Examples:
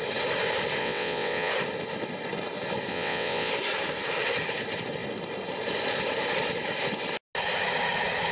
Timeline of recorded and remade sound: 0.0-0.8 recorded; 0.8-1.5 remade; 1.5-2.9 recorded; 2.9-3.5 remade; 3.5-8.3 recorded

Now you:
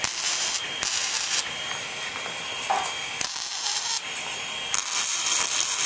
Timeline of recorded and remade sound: 0.0-5.9 recorded

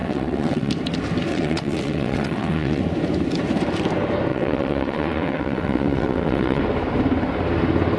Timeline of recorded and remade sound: 0.0-0.7 remade; 0.7-1.3 recorded; 1.3-2.8 remade; 2.8-4.3 recorded; 4.3-6.6 remade; 6.6-8.0 recorded